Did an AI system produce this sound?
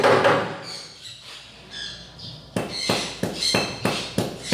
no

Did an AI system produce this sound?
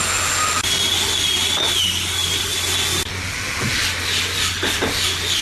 no